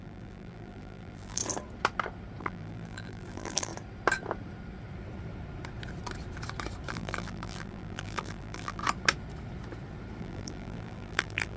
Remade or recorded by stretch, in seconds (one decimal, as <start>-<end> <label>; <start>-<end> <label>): 0.0-1.4 remade; 1.4-2.4 recorded; 2.4-3.7 remade; 3.7-6.9 recorded; 6.9-8.8 remade; 8.8-10.2 recorded; 10.2-11.6 remade